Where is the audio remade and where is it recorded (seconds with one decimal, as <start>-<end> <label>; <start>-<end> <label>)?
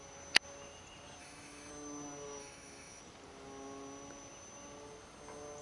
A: 0.0-1.2 recorded; 1.2-1.7 remade; 1.7-2.4 recorded; 2.4-3.0 remade; 3.0-5.6 recorded